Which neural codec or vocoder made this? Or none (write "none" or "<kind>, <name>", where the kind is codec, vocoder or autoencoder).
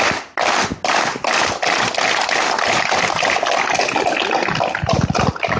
none